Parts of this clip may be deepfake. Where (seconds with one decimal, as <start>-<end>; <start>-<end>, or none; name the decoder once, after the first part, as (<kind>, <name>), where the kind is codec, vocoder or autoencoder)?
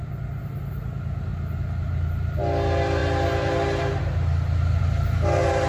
none